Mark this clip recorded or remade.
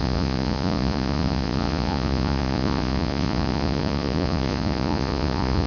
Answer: remade